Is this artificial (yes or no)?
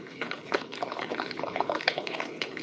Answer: yes